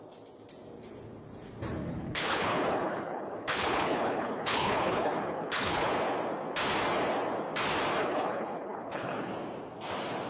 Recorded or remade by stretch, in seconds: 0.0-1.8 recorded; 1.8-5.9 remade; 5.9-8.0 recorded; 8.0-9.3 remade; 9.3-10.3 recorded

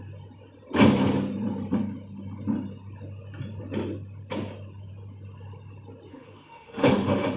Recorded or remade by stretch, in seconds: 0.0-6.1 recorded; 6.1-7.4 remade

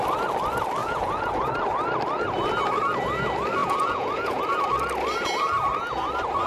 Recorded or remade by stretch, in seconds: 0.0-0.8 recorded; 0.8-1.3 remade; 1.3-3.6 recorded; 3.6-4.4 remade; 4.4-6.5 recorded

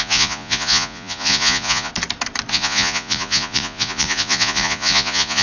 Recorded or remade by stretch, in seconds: 0.0-1.9 remade; 1.9-2.5 recorded; 2.5-5.4 remade

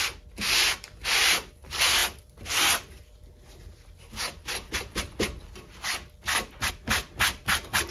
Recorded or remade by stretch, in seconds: 0.0-0.6 recorded; 0.6-1.3 remade; 1.3-7.9 recorded

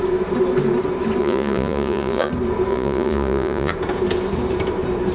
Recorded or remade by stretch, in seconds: 0.0-1.2 recorded; 1.2-2.3 remade; 2.3-2.7 recorded; 2.7-3.7 remade; 3.7-5.1 recorded